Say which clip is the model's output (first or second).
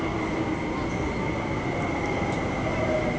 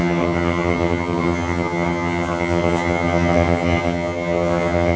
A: second